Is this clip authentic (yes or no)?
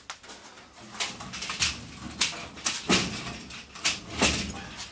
yes